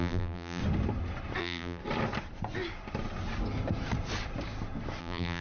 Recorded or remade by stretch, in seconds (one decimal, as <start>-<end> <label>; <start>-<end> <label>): 0.0-0.6 remade; 0.6-1.4 recorded; 1.4-1.8 remade; 1.8-5.0 recorded; 5.0-5.4 remade